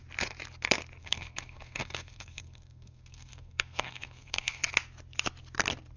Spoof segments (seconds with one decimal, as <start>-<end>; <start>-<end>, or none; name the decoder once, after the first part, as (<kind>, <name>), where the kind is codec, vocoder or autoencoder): 1.0-4.6 (codec, SNAC)